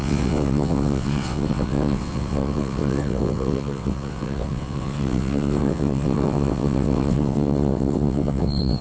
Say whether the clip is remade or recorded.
remade